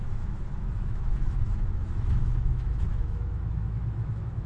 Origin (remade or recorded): remade